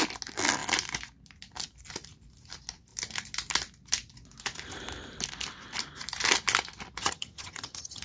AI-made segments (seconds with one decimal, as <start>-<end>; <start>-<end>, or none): 7.0-8.0